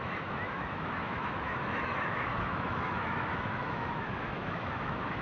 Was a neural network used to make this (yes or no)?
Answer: yes